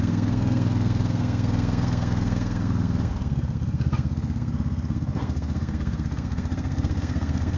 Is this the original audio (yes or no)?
no